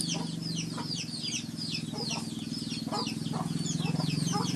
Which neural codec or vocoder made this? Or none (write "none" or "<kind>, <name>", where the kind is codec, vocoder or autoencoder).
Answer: none